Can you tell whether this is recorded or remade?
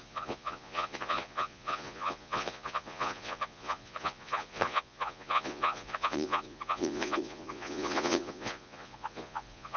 remade